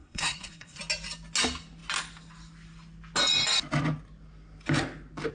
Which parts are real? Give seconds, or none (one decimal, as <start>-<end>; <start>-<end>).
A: 0.8-5.3